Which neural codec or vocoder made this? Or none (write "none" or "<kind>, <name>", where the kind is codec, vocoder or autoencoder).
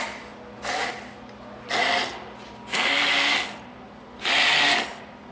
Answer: none